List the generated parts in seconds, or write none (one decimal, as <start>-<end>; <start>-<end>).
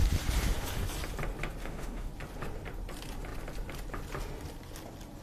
1.6-2.1